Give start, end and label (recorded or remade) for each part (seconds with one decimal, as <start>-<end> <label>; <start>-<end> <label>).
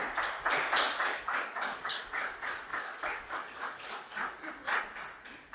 0.0-1.1 recorded; 1.1-2.1 remade; 2.1-2.7 recorded; 2.7-4.5 remade; 4.5-5.5 recorded